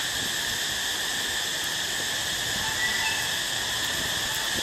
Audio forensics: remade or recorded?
recorded